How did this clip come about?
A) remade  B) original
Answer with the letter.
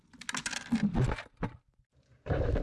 B